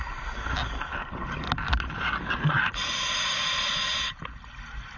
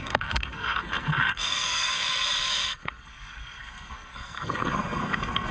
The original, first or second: first